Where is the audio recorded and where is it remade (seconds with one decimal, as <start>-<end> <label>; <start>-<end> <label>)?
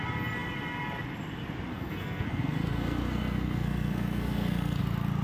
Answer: 0.0-1.7 recorded; 1.7-4.8 remade; 4.8-5.2 recorded